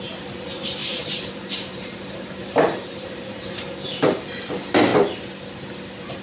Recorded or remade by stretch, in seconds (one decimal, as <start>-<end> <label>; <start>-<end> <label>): 0.0-0.8 recorded; 0.8-4.2 remade; 4.2-6.2 recorded